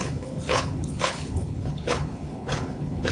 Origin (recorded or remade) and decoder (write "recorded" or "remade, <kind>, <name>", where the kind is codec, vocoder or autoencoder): remade, codec, HILCodec